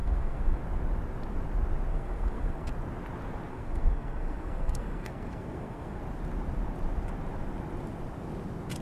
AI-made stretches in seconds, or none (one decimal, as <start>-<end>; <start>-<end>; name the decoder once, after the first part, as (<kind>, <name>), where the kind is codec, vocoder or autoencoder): 0.0-0.6 (codec, SNAC); 1.9-2.7; 3.5-6.0